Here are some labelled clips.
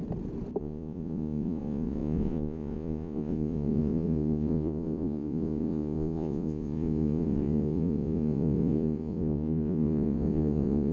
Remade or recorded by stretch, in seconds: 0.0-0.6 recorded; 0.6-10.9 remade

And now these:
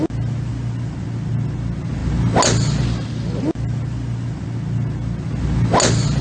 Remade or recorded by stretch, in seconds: 0.0-6.2 recorded

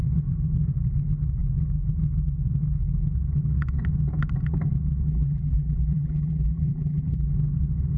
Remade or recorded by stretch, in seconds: 0.0-5.1 recorded; 5.1-7.3 remade; 7.3-8.0 recorded